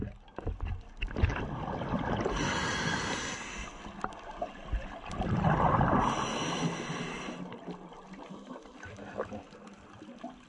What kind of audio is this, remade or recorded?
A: recorded